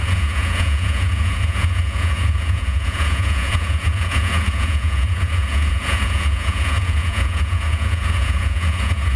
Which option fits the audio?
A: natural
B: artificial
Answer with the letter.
B